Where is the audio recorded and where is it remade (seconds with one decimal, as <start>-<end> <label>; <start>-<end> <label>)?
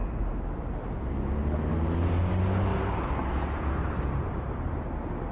0.0-5.3 recorded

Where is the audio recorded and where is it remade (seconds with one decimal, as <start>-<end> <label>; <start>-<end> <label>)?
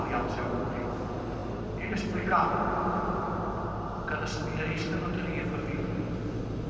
0.0-6.7 recorded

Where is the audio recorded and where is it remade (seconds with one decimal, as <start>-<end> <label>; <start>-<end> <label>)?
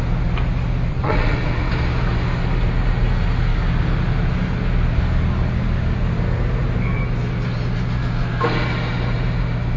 0.0-0.9 recorded; 0.9-1.7 remade; 1.7-9.8 recorded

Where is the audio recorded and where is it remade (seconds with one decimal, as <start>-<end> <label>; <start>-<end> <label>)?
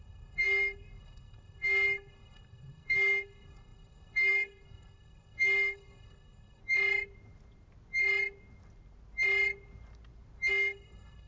0.0-6.6 remade; 6.6-10.5 recorded; 10.5-11.3 remade